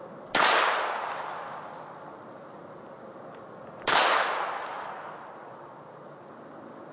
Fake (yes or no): no